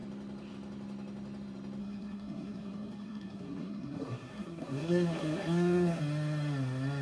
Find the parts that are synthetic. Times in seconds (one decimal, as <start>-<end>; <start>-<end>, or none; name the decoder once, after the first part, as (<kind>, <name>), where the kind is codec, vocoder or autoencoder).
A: 1.8-6.0 (codec, SNAC)